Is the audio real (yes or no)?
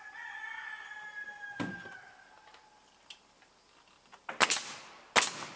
yes